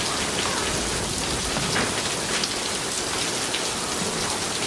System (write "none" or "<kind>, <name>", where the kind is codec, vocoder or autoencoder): none